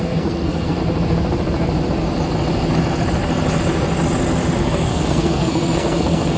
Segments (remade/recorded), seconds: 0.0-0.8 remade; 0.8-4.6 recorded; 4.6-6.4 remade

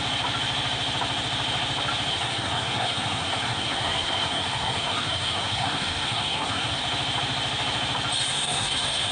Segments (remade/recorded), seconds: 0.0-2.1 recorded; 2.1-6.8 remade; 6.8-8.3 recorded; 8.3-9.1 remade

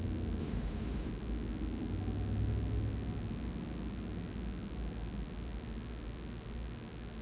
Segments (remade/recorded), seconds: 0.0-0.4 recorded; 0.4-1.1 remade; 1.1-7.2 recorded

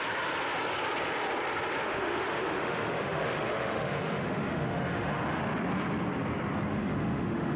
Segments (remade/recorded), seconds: 0.0-1.8 recorded; 1.8-5.4 remade; 5.4-6.7 recorded; 6.7-7.6 remade

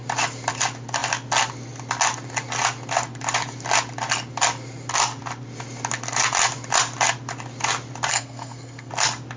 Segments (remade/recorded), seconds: 0.0-8.1 recorded; 8.1-8.9 remade; 8.9-9.4 recorded